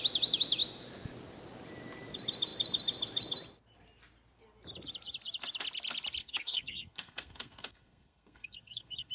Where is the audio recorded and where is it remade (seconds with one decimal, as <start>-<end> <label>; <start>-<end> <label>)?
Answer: 0.0-6.2 recorded; 6.2-9.1 remade